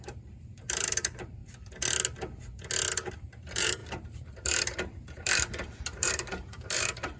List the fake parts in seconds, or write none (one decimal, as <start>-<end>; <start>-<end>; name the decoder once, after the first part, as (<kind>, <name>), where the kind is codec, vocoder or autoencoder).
0.0-1.4 (vocoder, BigVGAN v2); 3.1-7.2